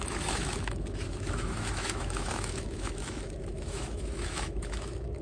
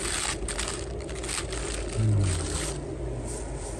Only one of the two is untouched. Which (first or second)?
second